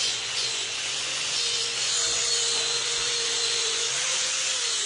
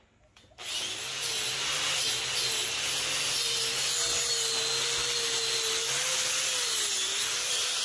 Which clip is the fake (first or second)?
first